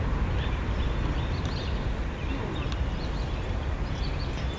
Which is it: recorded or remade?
recorded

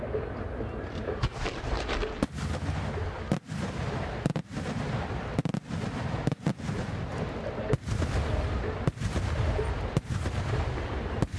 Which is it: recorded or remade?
recorded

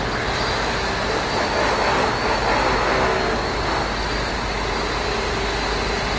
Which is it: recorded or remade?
recorded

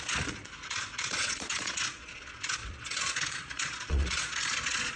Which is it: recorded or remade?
remade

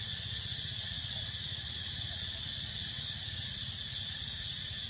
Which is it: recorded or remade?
remade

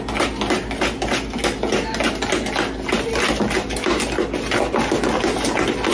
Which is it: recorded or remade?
recorded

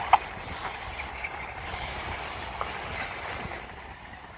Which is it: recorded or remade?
recorded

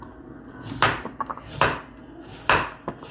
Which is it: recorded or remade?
recorded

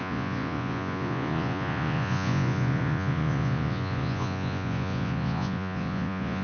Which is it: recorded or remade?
remade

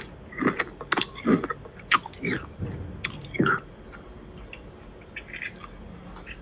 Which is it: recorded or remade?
recorded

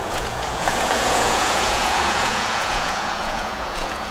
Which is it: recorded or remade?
remade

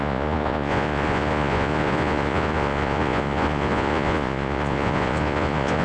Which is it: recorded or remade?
remade